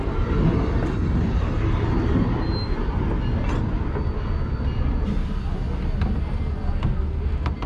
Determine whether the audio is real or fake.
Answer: real